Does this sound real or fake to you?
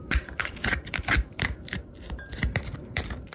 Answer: fake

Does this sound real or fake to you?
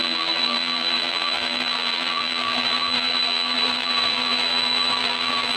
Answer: fake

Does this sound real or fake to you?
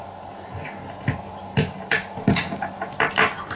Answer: real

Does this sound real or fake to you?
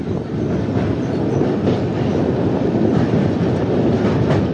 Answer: fake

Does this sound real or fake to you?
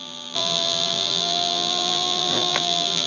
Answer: fake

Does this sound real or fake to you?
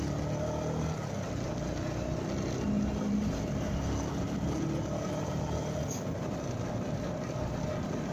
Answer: real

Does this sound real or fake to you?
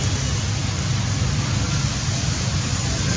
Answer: real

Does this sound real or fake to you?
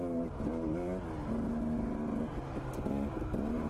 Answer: real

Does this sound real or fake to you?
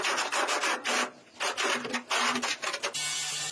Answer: real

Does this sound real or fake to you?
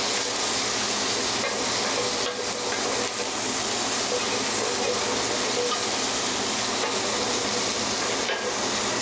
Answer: real